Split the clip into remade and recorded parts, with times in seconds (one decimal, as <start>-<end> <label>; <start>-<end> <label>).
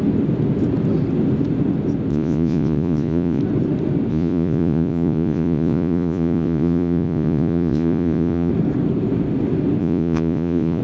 0.0-2.1 recorded; 2.1-3.4 remade; 3.4-4.1 recorded; 4.1-8.5 remade; 8.5-9.8 recorded; 9.8-10.8 remade